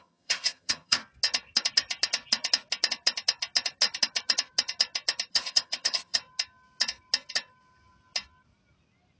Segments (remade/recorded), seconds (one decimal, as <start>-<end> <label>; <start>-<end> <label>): 0.0-1.0 remade; 1.0-5.3 recorded; 5.3-6.2 remade; 6.2-9.2 recorded